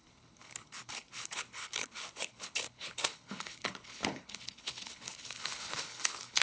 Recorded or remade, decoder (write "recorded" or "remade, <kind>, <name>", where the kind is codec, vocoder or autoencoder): remade, codec, HILCodec